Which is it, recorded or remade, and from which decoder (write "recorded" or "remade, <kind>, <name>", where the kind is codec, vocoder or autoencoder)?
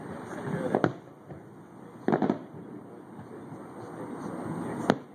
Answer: recorded